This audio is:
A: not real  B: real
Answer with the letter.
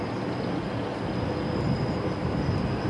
B